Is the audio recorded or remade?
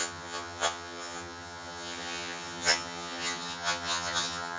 remade